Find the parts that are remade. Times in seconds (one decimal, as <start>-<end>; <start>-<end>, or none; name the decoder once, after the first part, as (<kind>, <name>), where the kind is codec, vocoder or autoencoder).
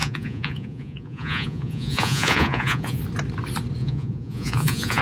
0.0-3.0 (vocoder, Vocos); 3.8-5.0